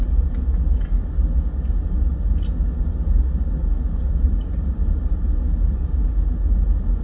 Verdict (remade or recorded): recorded